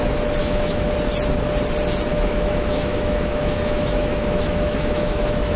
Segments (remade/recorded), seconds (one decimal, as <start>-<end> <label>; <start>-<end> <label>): 0.0-0.4 recorded; 0.4-0.9 remade; 0.9-2.1 recorded; 2.1-5.6 remade